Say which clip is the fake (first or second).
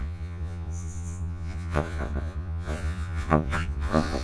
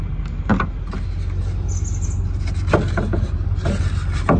first